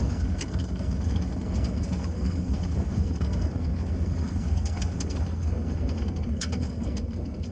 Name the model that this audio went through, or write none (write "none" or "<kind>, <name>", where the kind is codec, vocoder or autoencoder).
codec, SNAC